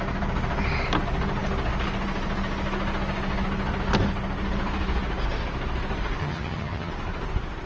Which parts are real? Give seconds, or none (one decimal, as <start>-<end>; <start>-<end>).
0.0-6.2; 6.9-7.7